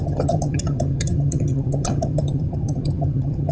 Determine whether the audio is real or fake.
fake